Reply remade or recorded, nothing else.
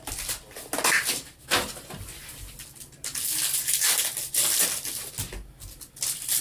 recorded